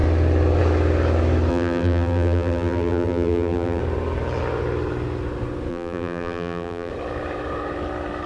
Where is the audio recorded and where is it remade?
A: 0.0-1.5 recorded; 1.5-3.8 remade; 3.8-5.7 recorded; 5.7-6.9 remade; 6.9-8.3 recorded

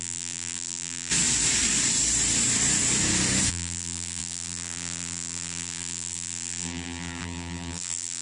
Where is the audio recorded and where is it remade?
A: 0.0-1.1 remade; 1.1-3.5 recorded; 3.5-8.2 remade

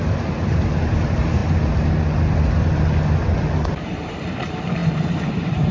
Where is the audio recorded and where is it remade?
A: 0.0-1.4 remade; 1.4-3.7 recorded; 3.7-5.7 remade

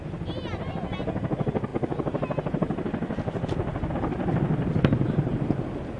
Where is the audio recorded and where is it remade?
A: 0.0-6.0 recorded

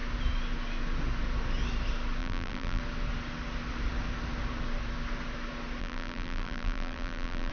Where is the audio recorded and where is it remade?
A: 0.0-2.2 recorded; 2.2-2.8 remade; 2.8-5.8 recorded; 5.8-7.5 remade

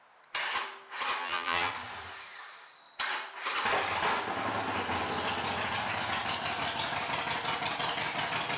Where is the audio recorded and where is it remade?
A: 0.0-1.2 recorded; 1.2-1.7 remade; 1.7-8.6 recorded

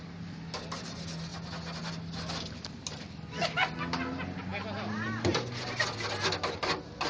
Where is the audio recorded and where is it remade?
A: 0.0-7.1 recorded